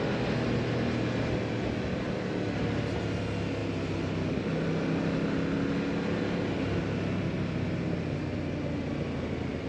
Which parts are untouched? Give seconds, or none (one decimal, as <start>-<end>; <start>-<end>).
0.0-9.7